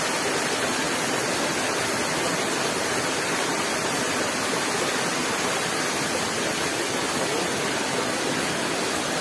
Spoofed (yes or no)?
no